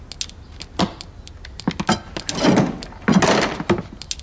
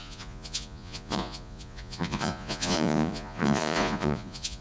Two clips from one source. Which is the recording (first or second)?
first